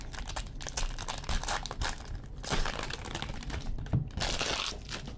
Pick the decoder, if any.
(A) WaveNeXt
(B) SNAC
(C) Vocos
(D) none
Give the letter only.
D